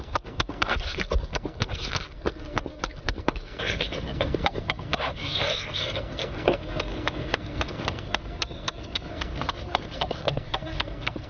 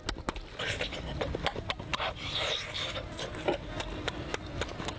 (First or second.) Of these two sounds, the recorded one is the second